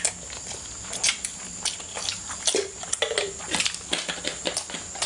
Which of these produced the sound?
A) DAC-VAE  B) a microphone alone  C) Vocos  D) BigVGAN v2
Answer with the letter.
B